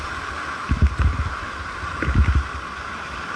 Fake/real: real